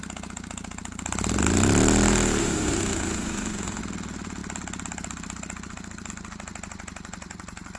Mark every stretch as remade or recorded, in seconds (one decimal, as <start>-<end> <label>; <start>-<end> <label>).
0.0-2.4 recorded; 2.4-3.8 remade; 3.8-7.8 recorded

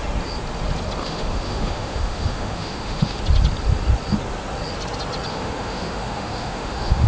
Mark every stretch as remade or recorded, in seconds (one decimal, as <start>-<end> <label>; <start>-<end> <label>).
0.0-1.0 recorded; 1.0-3.2 remade; 3.2-5.3 recorded; 5.3-7.1 remade

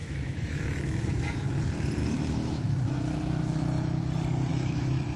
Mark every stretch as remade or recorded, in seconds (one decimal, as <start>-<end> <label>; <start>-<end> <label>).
0.0-1.6 remade; 1.6-2.0 recorded; 2.0-4.0 remade; 4.0-4.5 recorded; 4.5-5.2 remade

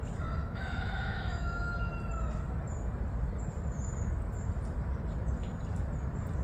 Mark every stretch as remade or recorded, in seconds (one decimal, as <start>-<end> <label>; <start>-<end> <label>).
0.0-0.4 recorded; 0.4-1.9 remade; 1.9-6.4 recorded

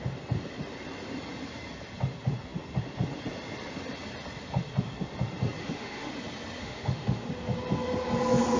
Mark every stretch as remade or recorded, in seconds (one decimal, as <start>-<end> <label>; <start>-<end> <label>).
0.0-5.6 recorded; 5.6-6.1 remade; 6.1-6.6 recorded; 6.6-7.3 remade; 7.3-8.6 recorded

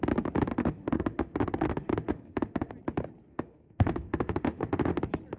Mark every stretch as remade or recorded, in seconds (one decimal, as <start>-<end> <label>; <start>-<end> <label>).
0.0-0.5 recorded; 0.5-2.7 remade; 2.7-3.3 recorded; 3.3-5.0 remade; 5.0-5.4 recorded